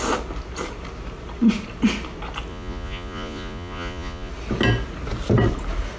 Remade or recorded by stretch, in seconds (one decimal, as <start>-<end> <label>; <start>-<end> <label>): 0.0-2.5 recorded; 2.5-4.3 remade; 4.3-6.0 recorded